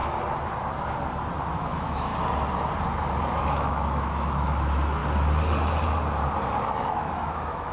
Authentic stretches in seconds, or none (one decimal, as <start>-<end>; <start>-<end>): 0.0-1.6; 2.1-3.4; 5.0-6.8